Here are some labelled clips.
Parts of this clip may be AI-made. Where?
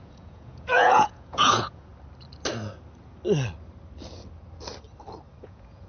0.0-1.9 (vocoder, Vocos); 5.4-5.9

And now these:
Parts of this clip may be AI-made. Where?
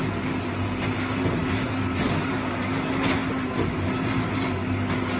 none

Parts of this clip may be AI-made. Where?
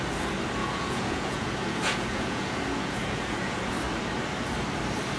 0.6-3.7 (vocoder, Vocos)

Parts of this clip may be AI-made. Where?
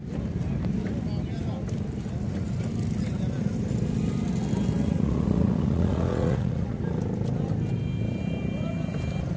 4.8-6.8 (vocoder, Vocos)